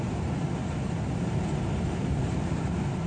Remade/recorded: recorded